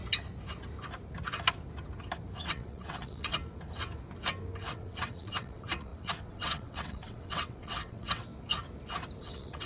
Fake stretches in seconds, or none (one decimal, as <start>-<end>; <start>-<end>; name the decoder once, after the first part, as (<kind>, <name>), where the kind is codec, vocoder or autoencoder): 2.4-3.4 (vocoder, WaveNeXt); 4.7-8.3; 9.2-9.7